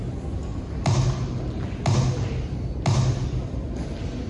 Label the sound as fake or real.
real